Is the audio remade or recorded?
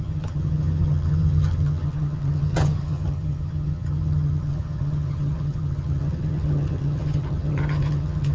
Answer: remade